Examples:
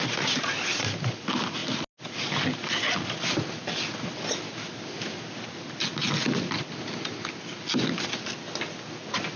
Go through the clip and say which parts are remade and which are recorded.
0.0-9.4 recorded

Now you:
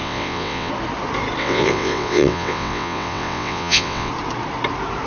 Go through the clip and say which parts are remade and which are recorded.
0.0-0.7 remade; 0.7-1.4 recorded; 1.4-4.1 remade; 4.1-5.1 recorded

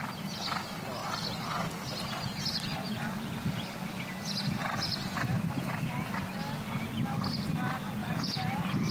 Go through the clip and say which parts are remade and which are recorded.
0.0-8.0 recorded; 8.0-8.9 remade